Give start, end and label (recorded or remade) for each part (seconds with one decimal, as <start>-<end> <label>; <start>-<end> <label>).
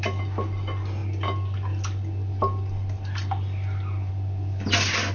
0.0-5.1 recorded